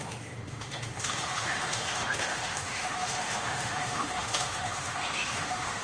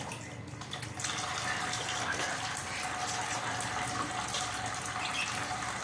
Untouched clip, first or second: second